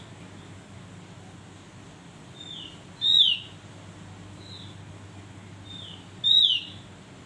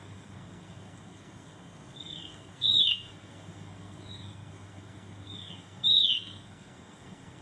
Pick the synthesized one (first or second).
second